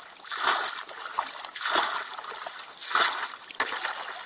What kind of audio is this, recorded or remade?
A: recorded